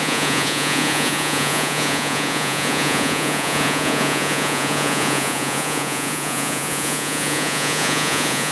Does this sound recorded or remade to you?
remade